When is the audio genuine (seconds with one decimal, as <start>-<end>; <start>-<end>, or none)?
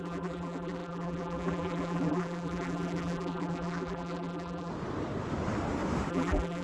4.7-6.1